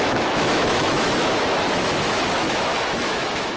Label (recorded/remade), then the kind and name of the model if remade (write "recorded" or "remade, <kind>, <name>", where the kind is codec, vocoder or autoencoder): remade, autoencoder, DAC-VAE